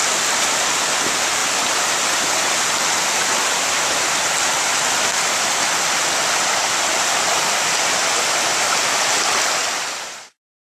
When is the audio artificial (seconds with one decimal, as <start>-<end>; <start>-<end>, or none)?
0.0-1.4; 2.0-10.6